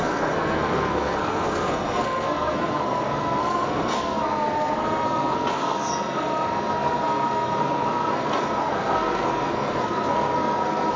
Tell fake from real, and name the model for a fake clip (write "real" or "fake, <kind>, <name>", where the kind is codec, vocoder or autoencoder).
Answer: fake, codec, SNAC